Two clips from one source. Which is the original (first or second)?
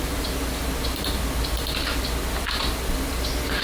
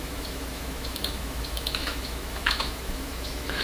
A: first